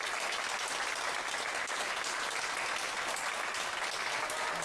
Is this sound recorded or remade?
recorded